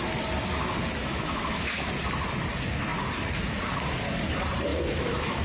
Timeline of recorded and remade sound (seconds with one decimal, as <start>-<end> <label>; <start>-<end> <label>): 0.0-1.0 recorded; 1.0-1.9 remade; 1.9-4.7 recorded; 4.7-5.4 remade